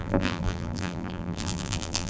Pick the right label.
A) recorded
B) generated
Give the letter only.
B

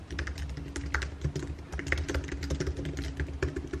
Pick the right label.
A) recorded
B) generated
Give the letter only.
A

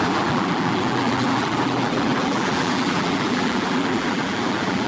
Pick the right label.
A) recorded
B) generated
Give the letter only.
B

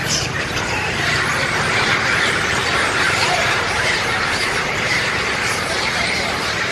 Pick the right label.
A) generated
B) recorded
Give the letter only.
A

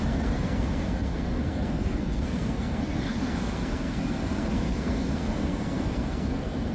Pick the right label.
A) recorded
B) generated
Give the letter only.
B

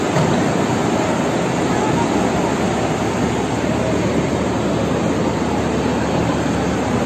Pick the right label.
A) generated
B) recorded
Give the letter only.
B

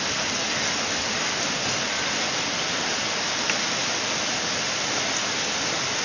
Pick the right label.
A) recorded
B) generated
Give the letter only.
A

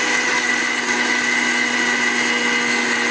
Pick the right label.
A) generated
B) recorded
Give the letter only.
B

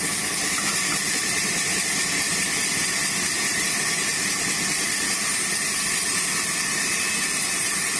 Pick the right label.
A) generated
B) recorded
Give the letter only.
B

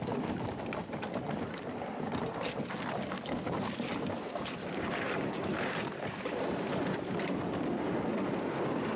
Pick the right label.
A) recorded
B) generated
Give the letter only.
A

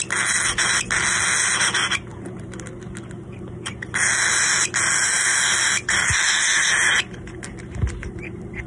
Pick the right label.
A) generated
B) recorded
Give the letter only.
B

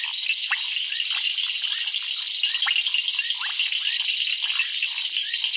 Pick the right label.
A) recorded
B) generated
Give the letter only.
A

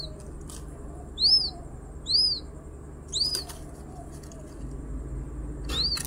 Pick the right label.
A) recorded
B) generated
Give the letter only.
A